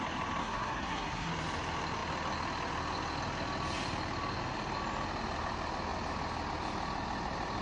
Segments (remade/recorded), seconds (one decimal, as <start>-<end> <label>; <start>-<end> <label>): 0.0-0.4 recorded; 0.4-1.3 remade; 1.3-7.6 recorded